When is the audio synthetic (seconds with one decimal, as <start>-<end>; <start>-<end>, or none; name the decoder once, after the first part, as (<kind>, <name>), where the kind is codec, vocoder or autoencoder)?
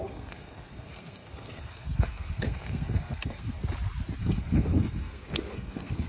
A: 0.0-3.6 (codec, SNAC); 4.2-6.1